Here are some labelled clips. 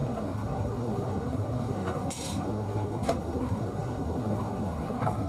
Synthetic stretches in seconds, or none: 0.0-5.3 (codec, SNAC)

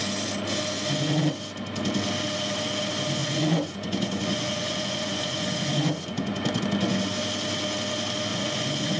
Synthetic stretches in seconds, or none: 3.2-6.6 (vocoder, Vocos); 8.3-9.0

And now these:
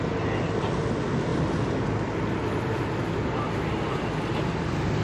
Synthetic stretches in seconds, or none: none

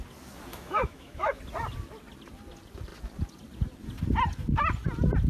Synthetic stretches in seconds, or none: 0.5-1.4 (autoencoder, DAC-VAE)